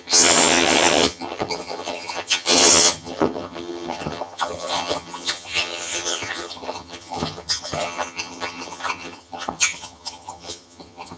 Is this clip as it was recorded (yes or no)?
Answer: no